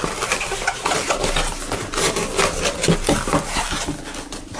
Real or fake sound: real